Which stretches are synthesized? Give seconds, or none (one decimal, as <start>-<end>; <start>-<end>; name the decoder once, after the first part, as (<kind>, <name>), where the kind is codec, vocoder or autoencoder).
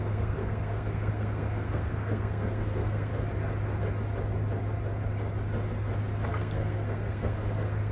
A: 0.0-3.1 (codec, SNAC); 6.3-7.9